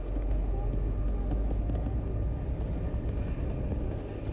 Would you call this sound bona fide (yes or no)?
yes